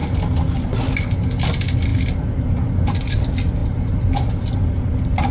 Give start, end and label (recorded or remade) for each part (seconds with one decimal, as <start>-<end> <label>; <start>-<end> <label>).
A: 0.0-5.3 recorded